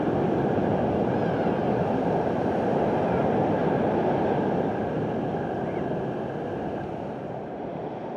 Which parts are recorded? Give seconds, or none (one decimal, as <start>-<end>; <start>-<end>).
0.0-8.2